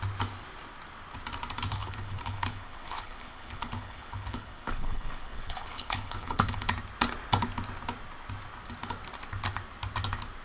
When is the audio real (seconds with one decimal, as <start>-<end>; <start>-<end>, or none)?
0.0-1.7; 6.7-10.4